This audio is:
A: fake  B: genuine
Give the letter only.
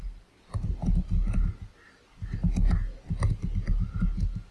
B